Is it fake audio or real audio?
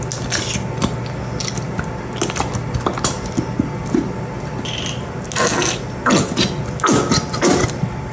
real